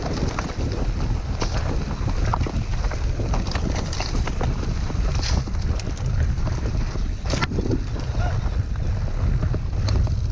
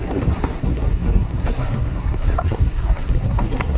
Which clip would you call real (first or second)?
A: first